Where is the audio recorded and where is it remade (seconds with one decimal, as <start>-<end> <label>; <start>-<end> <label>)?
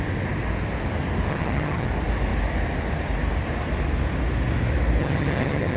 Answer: 0.0-1.3 recorded; 1.3-1.9 remade; 1.9-5.0 recorded; 5.0-5.8 remade